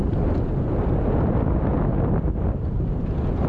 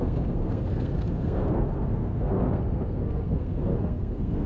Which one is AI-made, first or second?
second